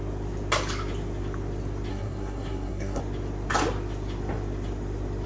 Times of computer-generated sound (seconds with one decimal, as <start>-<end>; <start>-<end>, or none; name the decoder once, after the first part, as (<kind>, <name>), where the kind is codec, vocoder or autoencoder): 1.9-3.0 (codec, SNAC)

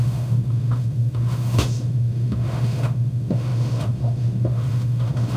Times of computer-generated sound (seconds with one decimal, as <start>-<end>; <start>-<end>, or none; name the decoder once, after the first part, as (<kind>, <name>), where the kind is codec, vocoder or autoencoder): 0.0-5.4 (autoencoder, DAC-VAE)

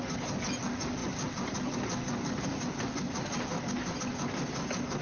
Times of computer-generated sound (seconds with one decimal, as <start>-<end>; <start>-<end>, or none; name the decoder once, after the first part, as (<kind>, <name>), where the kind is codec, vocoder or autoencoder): none

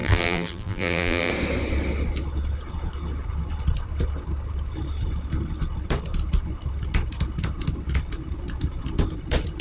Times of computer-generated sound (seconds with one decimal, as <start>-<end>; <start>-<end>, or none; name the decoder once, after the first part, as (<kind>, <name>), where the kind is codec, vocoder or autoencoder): 0.0-1.3 (vocoder, BigVGAN v2)

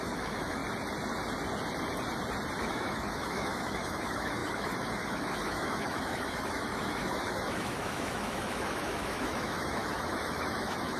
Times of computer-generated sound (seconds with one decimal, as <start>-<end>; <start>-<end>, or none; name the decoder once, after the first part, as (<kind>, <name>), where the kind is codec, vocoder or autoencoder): 0.0-0.6 (autoencoder, DAC-VAE); 2.6-11.0

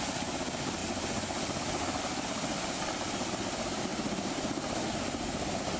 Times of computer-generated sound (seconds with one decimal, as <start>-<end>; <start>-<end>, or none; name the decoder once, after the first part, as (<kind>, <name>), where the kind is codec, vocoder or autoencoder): none